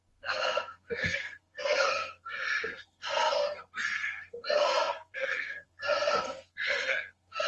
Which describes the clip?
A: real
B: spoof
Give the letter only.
B